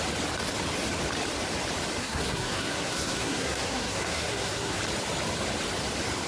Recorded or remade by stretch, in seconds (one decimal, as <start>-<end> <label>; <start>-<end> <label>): 0.0-2.0 recorded; 2.0-4.8 remade; 4.8-6.3 recorded